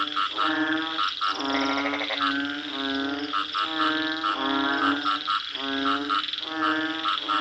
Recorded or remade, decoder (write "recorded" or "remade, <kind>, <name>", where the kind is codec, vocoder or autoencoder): recorded